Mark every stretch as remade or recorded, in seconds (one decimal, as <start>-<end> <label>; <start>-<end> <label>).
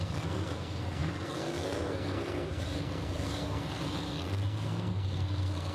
0.0-5.7 remade